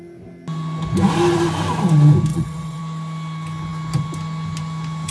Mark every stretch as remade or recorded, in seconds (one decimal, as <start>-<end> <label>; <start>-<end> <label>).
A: 0.0-2.3 recorded; 2.3-2.8 remade; 2.8-5.1 recorded